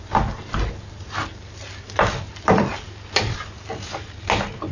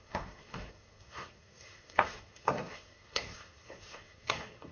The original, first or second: first